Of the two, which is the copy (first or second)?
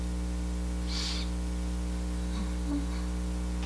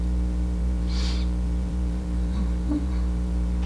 second